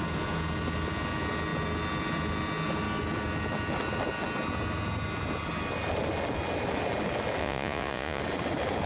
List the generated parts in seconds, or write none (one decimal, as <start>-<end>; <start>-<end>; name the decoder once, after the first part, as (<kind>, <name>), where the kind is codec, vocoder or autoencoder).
7.4-8.2 (vocoder, Vocos)